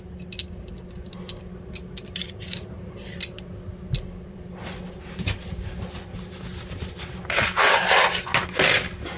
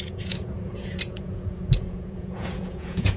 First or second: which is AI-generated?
second